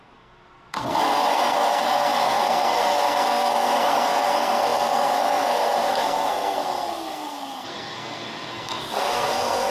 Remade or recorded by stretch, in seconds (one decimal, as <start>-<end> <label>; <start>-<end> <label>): 0.0-9.7 remade